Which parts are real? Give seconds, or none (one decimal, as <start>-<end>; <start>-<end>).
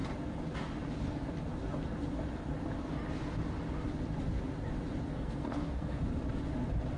0.0-5.1; 6.0-7.0